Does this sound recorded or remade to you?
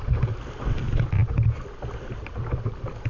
recorded